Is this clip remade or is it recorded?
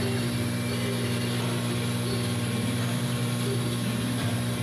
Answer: remade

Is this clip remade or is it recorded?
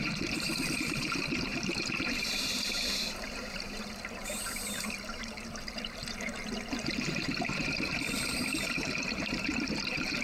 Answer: remade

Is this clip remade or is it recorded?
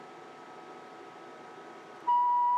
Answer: remade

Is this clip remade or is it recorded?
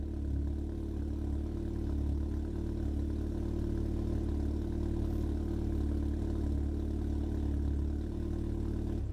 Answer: recorded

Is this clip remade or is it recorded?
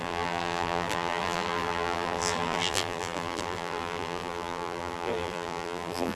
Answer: remade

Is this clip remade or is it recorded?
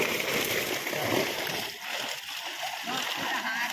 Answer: recorded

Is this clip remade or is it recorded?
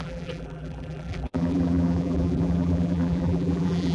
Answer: remade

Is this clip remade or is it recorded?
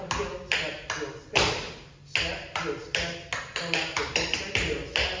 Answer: recorded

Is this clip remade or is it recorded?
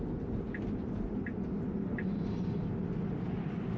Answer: recorded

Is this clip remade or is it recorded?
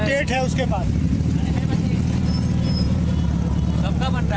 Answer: remade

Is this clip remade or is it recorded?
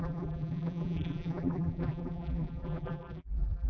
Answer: remade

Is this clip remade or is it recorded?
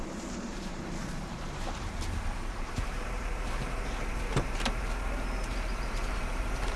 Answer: remade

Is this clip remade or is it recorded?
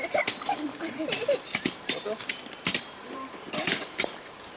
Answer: remade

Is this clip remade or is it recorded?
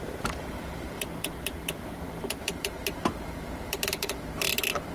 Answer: remade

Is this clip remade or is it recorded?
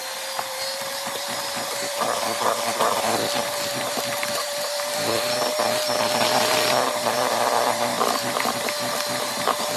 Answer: remade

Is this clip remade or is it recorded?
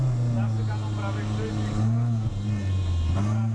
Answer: recorded